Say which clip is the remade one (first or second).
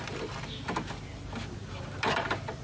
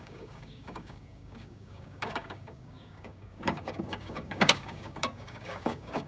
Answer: second